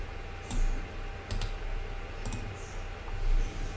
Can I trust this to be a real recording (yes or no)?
yes